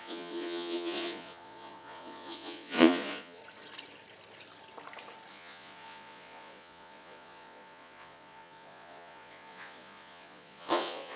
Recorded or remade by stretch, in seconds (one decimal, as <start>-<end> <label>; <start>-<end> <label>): 0.0-3.4 remade; 3.4-5.3 recorded; 5.3-11.2 remade